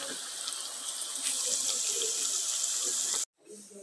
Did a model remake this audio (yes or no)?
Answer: no